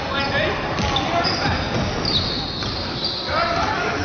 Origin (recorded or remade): recorded